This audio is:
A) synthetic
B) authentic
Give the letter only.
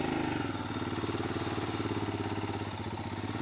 B